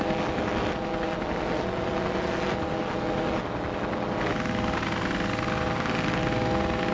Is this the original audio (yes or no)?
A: yes